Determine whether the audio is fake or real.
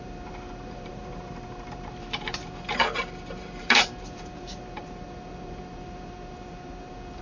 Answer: fake